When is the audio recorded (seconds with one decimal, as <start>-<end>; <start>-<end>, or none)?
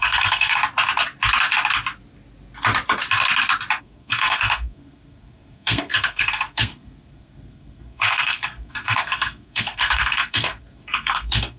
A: 0.6-3.8